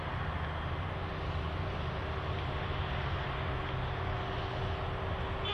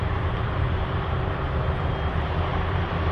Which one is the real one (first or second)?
first